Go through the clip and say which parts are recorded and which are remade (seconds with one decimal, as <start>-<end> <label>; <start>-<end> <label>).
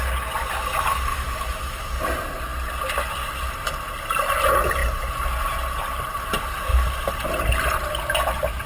0.0-1.1 recorded; 1.1-1.9 remade; 1.9-8.7 recorded